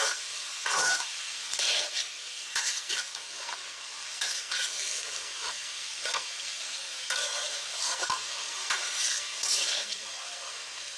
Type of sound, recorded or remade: remade